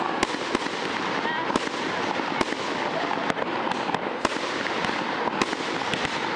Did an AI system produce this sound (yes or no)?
no